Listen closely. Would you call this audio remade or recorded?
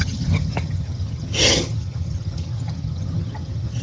remade